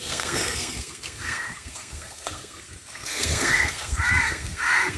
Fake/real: fake